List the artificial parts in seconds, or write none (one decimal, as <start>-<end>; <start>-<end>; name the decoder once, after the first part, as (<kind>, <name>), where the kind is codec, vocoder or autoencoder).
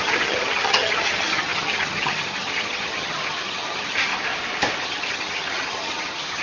0.0-4.1 (vocoder, HiFi-GAN); 4.8-6.4